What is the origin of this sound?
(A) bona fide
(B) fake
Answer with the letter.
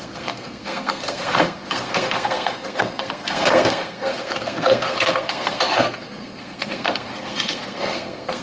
B